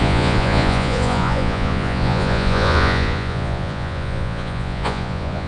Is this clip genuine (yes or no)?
no